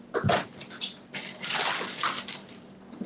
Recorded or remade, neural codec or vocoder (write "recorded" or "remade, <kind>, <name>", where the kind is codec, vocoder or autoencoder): recorded